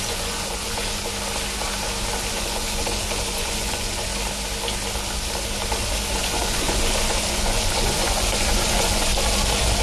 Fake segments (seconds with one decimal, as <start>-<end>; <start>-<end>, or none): 0.0-1.1; 2.3-4.1; 6.2-9.1